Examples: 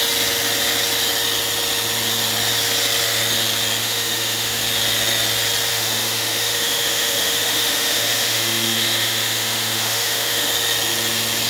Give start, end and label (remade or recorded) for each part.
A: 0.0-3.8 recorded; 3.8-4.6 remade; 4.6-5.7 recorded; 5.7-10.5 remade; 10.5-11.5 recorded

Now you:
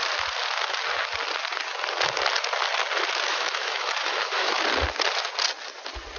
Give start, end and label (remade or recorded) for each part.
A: 0.0-3.3 recorded; 3.3-4.6 remade; 4.6-6.2 recorded

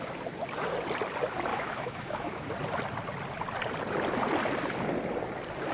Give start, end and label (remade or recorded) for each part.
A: 0.0-1.5 recorded; 1.5-2.5 remade; 2.5-5.7 recorded

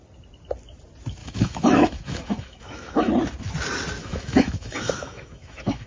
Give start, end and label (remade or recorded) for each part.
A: 0.0-1.2 recorded; 1.2-3.1 remade; 3.1-4.0 recorded; 4.0-5.9 remade

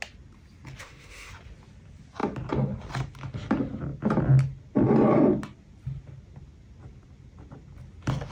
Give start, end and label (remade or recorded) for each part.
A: 0.0-0.8 recorded; 0.8-1.3 remade; 1.3-8.3 recorded

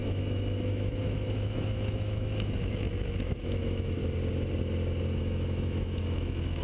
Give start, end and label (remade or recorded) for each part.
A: 0.0-4.0 remade; 4.0-5.2 recorded; 5.2-6.6 remade